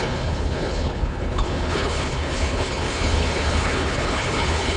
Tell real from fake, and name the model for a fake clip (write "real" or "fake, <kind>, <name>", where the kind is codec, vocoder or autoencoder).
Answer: fake, codec, HILCodec